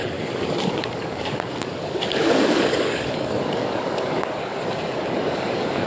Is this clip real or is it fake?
fake